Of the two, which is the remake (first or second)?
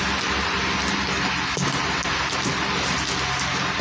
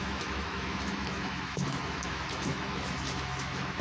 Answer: second